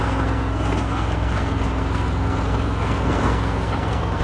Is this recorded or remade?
remade